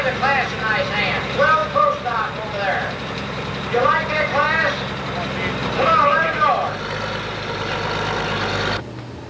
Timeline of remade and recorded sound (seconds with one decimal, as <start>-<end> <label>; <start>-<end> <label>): 0.0-1.6 recorded; 1.6-4.3 remade; 4.3-5.6 recorded; 5.6-6.5 remade; 6.5-9.3 recorded